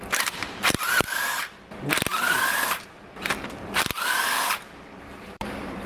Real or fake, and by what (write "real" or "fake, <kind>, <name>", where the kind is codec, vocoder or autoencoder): fake, vocoder, BigVGAN v2